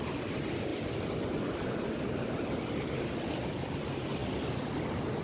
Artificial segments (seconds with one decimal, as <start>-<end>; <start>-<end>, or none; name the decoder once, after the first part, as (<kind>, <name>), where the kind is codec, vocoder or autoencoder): none